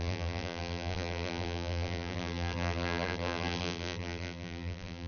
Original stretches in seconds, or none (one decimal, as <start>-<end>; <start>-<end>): none